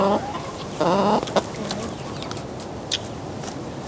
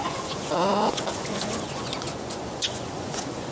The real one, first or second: first